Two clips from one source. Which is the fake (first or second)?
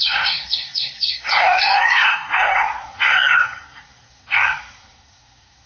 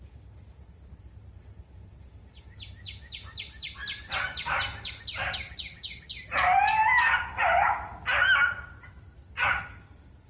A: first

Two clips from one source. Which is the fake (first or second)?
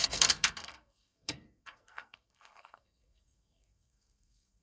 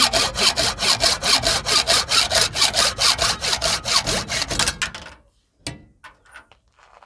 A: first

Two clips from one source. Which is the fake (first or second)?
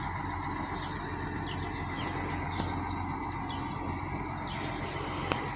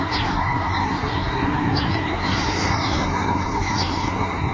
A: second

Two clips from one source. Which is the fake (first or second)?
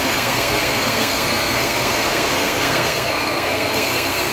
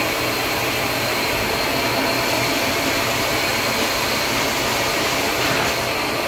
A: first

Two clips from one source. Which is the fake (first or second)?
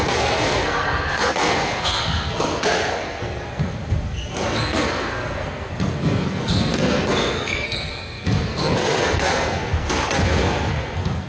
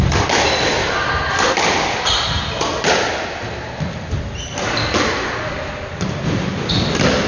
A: first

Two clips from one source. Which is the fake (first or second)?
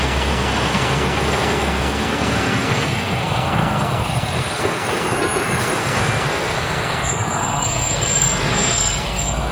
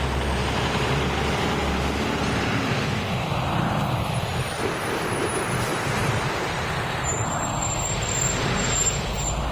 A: first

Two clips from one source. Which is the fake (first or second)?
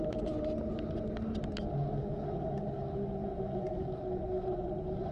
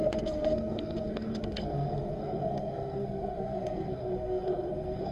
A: second